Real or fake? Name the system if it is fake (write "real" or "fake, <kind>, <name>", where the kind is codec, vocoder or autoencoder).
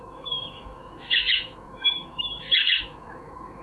fake, autoencoder, DAC-VAE